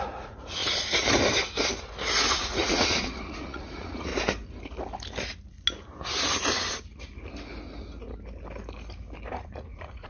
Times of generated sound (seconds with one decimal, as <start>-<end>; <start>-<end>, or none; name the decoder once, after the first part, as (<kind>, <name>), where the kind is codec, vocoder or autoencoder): 0.0-0.6 (vocoder, Vocos); 2.3-4.1; 9.3-10.1